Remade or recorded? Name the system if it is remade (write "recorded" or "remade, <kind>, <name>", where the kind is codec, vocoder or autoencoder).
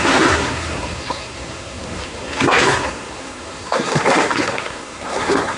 remade, codec, SNAC